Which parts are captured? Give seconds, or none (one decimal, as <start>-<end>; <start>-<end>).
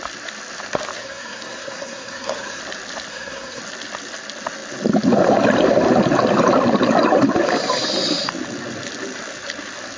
0.0-1.0; 2.6-3.1; 3.6-10.0